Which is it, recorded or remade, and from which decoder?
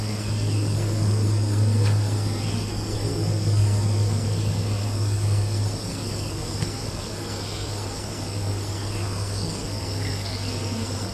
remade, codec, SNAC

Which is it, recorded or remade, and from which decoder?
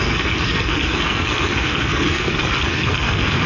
remade, codec, SNAC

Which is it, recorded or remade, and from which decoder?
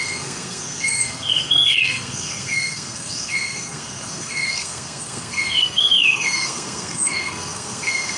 remade, codec, SNAC